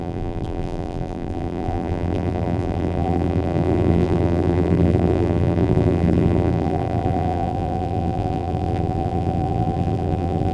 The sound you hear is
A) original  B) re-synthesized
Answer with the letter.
B